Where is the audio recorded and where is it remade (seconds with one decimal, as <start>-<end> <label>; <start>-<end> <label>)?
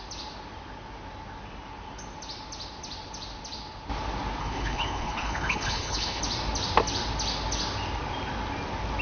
0.0-4.4 recorded; 4.4-6.2 remade; 6.2-9.0 recorded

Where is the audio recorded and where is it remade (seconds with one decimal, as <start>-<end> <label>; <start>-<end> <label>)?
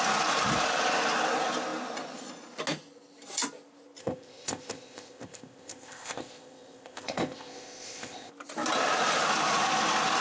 0.0-4.0 recorded; 4.0-8.3 remade; 8.3-10.2 recorded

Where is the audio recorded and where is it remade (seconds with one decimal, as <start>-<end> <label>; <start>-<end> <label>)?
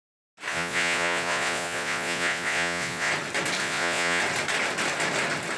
0.0-0.5 recorded; 0.5-3.1 remade; 3.1-3.6 recorded; 3.6-4.2 remade; 4.2-5.6 recorded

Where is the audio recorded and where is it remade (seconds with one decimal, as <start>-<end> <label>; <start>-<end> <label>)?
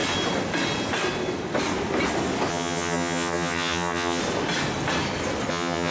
0.0-2.5 recorded; 2.5-4.2 remade; 4.2-5.5 recorded; 5.5-5.9 remade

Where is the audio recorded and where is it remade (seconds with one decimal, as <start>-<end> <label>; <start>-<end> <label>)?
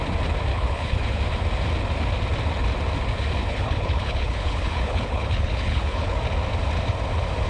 0.0-0.5 recorded; 0.5-1.2 remade; 1.2-3.5 recorded; 3.5-6.2 remade; 6.2-7.5 recorded